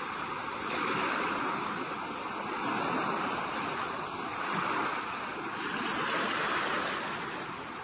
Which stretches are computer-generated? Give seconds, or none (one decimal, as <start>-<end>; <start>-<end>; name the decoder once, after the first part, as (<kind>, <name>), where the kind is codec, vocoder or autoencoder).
none

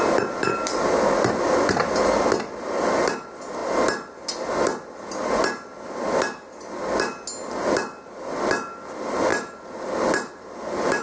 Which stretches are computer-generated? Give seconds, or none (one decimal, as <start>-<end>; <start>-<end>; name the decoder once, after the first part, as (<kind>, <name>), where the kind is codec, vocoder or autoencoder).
none

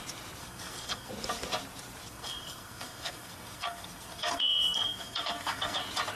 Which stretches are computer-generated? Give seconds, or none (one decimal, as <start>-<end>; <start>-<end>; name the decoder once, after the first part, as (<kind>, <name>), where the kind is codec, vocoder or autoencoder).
0.4-1.1 (codec, SNAC); 2.1-5.8

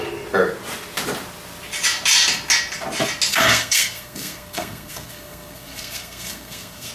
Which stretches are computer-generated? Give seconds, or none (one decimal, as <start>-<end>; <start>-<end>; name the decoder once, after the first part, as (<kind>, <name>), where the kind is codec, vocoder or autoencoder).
3.3-6.9 (codec, SNAC)

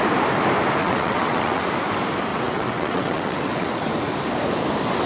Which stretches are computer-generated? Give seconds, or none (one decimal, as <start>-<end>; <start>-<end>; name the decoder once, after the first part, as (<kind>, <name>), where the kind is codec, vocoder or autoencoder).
0.8-1.6 (vocoder, WaveNeXt); 2.3-3.7

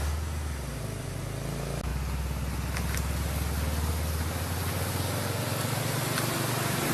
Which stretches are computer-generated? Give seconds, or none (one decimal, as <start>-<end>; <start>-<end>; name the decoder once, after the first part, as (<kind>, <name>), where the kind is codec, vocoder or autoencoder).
none